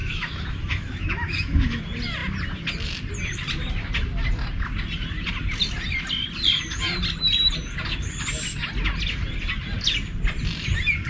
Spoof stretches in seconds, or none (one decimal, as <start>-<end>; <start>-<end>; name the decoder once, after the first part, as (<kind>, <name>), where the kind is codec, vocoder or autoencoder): 0.0-1.8 (autoencoder, DAC-VAE)